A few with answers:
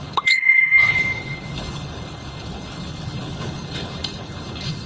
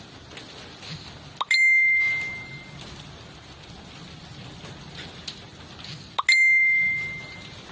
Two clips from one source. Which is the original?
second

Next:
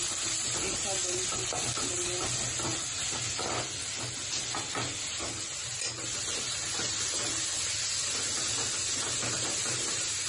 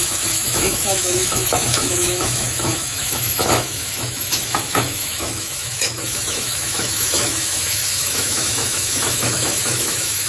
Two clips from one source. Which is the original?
first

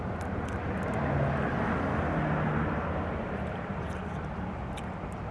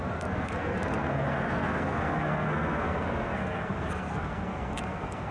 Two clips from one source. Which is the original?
first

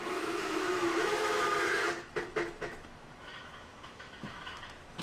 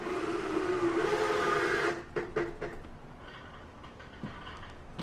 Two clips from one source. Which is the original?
second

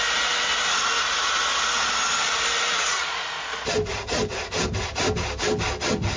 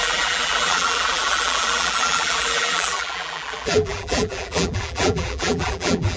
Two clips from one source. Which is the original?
first